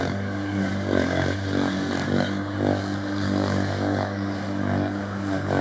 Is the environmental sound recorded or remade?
remade